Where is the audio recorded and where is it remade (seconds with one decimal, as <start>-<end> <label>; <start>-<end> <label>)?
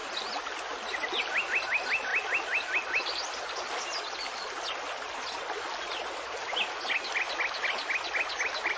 0.0-8.8 recorded